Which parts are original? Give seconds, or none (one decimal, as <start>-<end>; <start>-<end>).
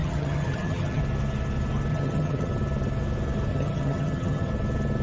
1.0-1.9; 2.5-3.5; 4.5-5.0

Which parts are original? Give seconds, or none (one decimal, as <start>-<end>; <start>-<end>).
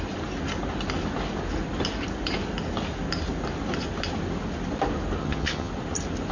0.0-5.2; 5.7-6.3